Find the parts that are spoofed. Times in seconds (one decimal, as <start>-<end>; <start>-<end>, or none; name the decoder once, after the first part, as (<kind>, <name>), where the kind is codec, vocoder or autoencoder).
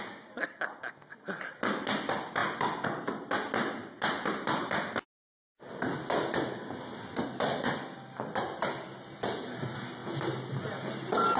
none